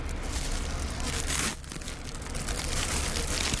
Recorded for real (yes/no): yes